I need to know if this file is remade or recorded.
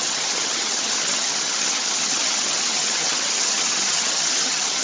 remade